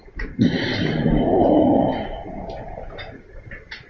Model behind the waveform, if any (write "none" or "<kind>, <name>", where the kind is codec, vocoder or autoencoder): vocoder, BigVGAN v2